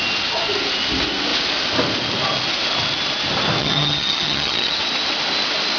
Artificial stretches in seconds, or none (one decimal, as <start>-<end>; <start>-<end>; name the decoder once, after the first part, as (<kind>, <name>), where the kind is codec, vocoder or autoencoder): 3.6-4.8 (vocoder, HiFi-GAN)